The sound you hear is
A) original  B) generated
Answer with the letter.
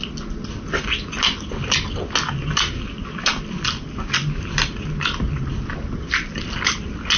A